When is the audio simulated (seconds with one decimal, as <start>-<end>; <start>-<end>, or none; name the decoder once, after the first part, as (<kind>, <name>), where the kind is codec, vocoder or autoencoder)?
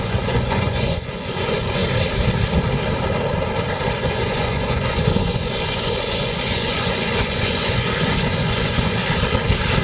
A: 0.0-1.8 (vocoder, Vocos); 4.0-9.0